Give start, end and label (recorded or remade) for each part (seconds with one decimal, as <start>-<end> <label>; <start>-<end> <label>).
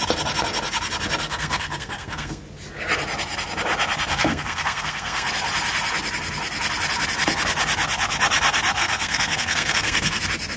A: 0.0-1.2 recorded; 1.2-2.4 remade; 2.4-4.1 recorded; 4.1-5.3 remade; 5.3-8.8 recorded; 8.8-10.2 remade; 10.2-10.6 recorded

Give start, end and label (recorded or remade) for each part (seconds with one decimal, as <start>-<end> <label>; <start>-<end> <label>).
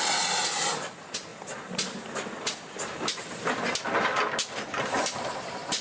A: 0.0-5.8 recorded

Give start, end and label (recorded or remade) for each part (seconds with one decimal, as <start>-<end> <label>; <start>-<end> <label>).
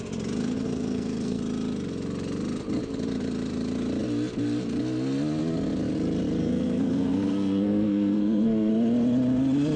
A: 0.0-0.4 recorded; 0.4-1.4 remade; 1.4-6.4 recorded; 6.4-8.7 remade; 8.7-9.8 recorded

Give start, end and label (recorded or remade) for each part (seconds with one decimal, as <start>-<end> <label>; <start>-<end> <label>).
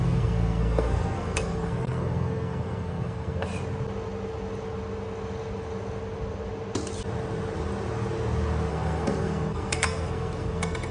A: 0.0-3.5 remade; 3.5-8.7 recorded; 8.7-10.9 remade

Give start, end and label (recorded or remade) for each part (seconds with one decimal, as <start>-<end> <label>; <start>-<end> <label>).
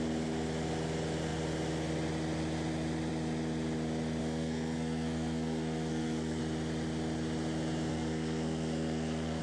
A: 0.0-4.2 recorded; 4.2-6.4 remade; 6.4-7.9 recorded; 7.9-9.4 remade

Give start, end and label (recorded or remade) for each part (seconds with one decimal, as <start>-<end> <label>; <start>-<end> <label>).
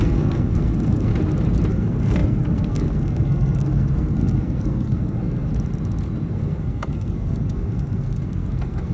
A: 0.0-1.1 remade; 1.1-1.7 recorded; 1.7-5.5 remade; 5.5-6.3 recorded; 6.3-8.9 remade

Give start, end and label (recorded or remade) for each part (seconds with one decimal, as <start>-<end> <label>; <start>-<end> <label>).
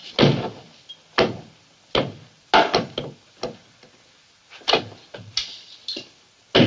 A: 0.0-6.7 recorded